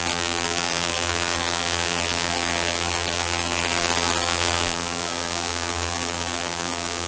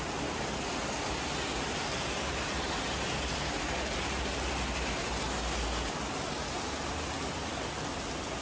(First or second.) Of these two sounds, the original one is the second